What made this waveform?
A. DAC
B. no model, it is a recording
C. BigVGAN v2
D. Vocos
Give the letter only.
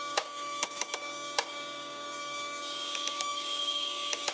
A